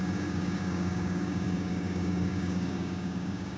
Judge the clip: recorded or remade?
remade